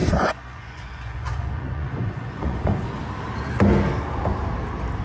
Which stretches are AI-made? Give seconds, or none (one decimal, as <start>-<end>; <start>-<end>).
0.0-3.0